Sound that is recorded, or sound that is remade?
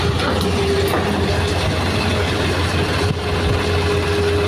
recorded